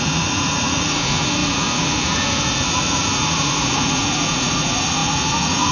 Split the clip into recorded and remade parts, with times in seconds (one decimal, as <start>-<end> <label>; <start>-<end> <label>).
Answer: 0.0-5.7 remade